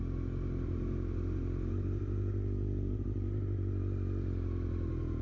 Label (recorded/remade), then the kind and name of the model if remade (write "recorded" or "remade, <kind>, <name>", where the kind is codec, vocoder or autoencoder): recorded